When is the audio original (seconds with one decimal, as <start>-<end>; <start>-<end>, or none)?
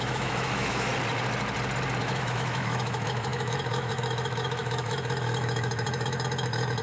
0.9-2.0